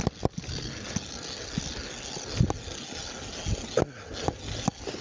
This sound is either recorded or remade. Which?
recorded